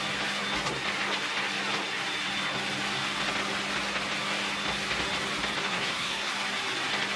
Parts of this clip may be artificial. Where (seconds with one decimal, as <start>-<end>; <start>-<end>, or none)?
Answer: 5.6-6.3